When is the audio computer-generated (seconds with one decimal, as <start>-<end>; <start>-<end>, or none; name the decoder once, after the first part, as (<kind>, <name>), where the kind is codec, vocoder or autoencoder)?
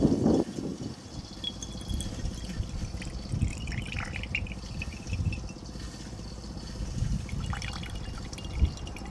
none